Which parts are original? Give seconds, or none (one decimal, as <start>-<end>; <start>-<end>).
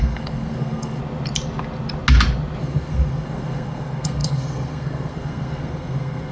1.0-2.6